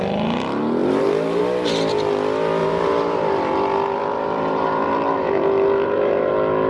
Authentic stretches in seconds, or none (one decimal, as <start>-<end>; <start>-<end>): 0.0-0.8; 1.4-2.6; 6.3-6.7